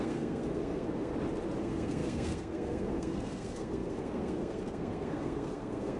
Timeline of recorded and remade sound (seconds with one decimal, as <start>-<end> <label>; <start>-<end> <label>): 0.0-1.1 remade; 1.1-1.6 recorded; 1.6-6.0 remade